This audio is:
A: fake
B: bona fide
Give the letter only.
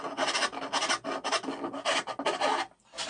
B